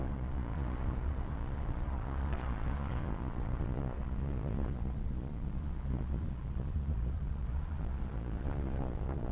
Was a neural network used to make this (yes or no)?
yes